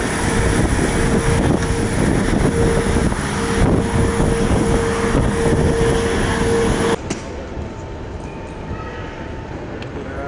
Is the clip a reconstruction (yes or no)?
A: no